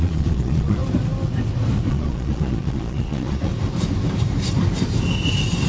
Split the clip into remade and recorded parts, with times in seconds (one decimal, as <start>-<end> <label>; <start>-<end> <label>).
0.0-0.8 remade; 0.8-1.9 recorded; 1.9-3.5 remade; 3.5-5.7 recorded